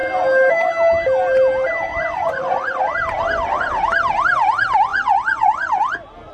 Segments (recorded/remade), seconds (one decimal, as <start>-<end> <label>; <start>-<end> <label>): 0.0-1.9 recorded; 1.9-2.8 remade; 2.8-4.9 recorded; 4.9-5.7 remade; 5.7-6.3 recorded